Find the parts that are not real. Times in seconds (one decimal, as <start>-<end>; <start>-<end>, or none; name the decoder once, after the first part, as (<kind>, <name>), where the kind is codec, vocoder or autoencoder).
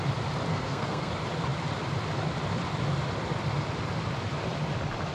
0.5-1.1 (codec, SNAC)